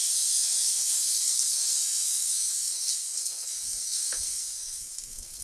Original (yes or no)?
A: no